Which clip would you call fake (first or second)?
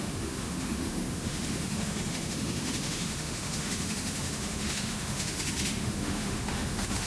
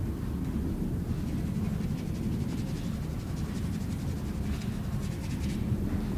first